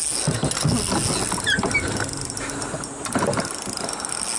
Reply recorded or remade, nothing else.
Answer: recorded